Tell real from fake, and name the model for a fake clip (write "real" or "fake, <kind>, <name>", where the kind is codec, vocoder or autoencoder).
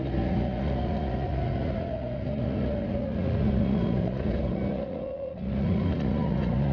fake, vocoder, Vocos